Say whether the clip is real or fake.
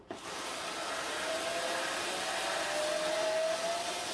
real